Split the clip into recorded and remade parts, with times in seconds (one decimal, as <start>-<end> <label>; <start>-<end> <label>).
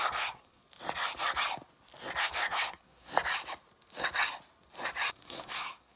0.0-0.6 remade; 0.6-2.2 recorded; 2.2-3.1 remade; 3.1-5.1 recorded; 5.1-6.0 remade